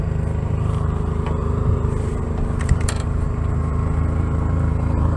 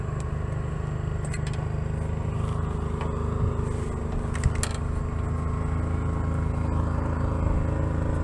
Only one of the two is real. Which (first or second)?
second